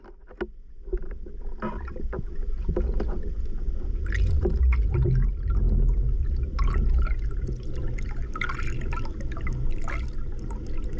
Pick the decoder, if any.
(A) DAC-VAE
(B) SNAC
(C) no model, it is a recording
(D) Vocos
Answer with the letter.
C